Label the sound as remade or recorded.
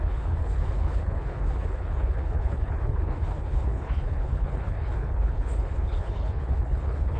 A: remade